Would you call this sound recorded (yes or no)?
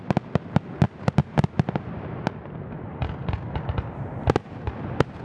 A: yes